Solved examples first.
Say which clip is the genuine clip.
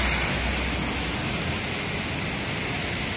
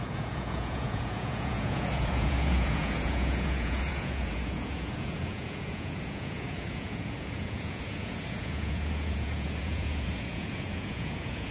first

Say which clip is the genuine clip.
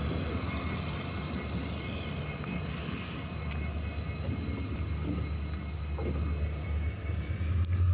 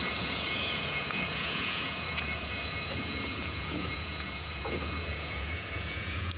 first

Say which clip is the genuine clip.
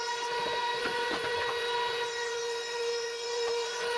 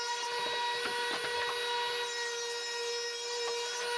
second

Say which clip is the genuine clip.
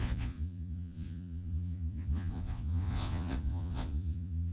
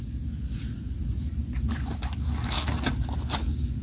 second